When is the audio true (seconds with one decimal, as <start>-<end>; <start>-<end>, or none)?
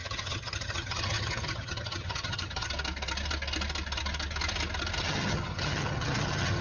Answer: 2.7-5.0